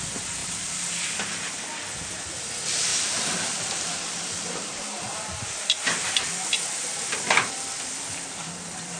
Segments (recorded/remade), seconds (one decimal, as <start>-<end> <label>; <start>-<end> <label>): 0.0-0.4 recorded; 0.4-0.9 remade; 0.9-2.9 recorded; 2.9-7.5 remade; 7.5-9.0 recorded